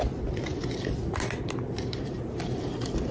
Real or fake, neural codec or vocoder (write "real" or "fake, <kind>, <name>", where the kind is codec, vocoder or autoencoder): real